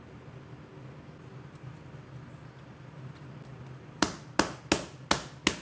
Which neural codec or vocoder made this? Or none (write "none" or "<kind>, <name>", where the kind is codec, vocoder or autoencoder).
none